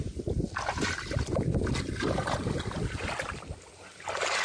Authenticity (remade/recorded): recorded